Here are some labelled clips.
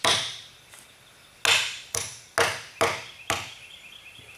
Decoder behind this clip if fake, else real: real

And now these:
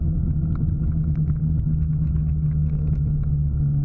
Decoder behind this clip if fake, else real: real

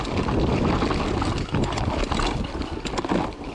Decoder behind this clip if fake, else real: real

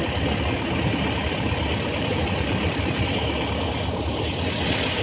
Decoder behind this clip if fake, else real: real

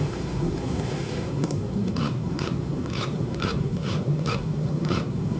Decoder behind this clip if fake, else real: fake, codec, SNAC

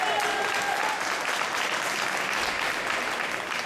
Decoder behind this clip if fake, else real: real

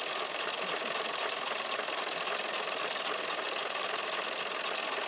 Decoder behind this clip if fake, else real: real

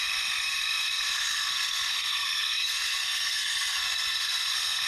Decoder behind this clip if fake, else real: fake, codec, SNAC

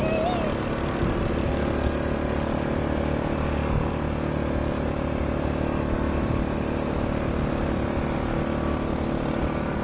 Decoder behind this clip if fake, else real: real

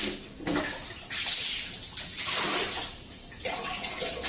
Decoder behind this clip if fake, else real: real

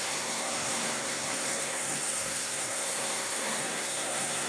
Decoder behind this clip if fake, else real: fake, codec, SNAC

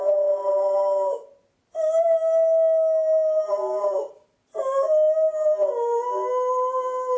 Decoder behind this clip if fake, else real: real